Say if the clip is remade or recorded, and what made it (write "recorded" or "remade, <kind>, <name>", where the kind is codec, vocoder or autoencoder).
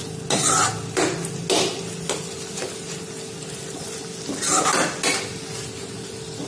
recorded